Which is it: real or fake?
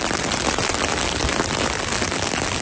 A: real